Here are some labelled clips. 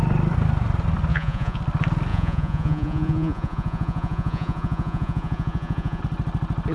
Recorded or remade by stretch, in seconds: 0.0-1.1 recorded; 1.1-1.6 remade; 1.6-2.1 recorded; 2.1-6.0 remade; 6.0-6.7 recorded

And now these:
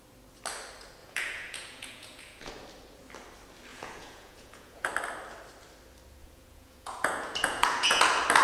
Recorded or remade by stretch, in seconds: 0.0-1.0 recorded; 1.0-2.5 remade; 2.5-3.7 recorded; 3.7-4.9 remade; 4.9-6.2 recorded; 6.2-8.0 remade; 8.0-8.4 recorded

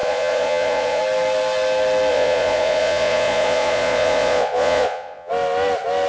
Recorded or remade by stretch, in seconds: 0.0-1.0 remade; 1.0-2.1 recorded; 2.1-5.3 remade; 5.3-6.1 recorded

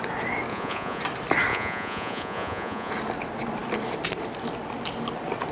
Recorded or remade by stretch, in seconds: 0.0-0.5 recorded; 0.5-1.0 remade; 1.0-1.5 recorded; 1.5-2.9 remade; 2.9-5.5 recorded

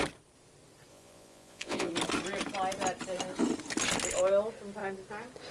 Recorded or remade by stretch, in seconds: 0.0-0.9 recorded; 0.9-1.9 remade; 1.9-5.5 recorded

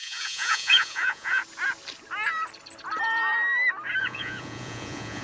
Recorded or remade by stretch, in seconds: 0.0-1.4 remade; 1.4-4.0 recorded; 4.0-5.2 remade

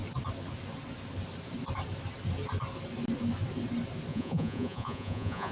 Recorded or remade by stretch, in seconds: 0.0-4.1 recorded; 4.1-5.5 remade